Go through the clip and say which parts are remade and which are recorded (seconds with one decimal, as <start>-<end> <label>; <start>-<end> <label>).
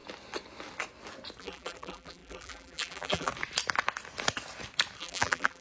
0.0-1.4 recorded; 1.4-3.3 remade; 3.3-5.0 recorded; 5.0-5.6 remade